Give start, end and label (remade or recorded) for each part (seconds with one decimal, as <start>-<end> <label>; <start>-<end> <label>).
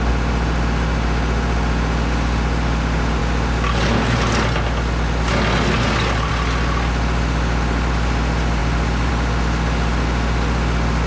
0.0-11.1 recorded